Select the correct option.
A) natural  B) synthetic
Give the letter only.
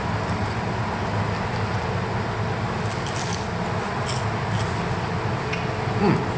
A